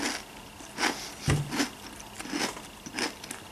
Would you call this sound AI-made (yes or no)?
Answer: no